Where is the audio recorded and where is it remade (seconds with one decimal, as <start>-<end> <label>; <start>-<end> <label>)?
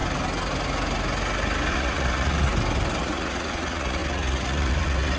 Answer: 0.0-1.7 recorded; 1.7-2.5 remade; 2.5-3.0 recorded; 3.0-5.2 remade